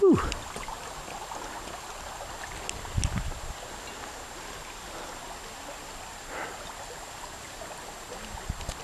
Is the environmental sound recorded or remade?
recorded